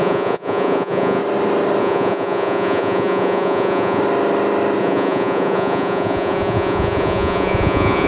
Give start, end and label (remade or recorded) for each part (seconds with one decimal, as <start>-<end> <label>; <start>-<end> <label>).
0.0-1.2 remade; 1.2-1.8 recorded; 1.8-4.0 remade; 4.0-4.8 recorded; 4.8-8.1 remade

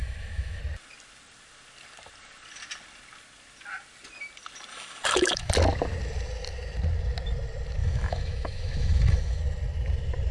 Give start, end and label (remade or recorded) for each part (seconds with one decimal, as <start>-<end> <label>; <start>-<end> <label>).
0.0-0.6 remade; 0.6-4.7 recorded; 4.7-5.5 remade; 5.5-7.8 recorded; 7.8-9.4 remade; 9.4-10.3 recorded